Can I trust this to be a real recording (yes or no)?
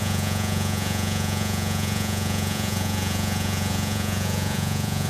no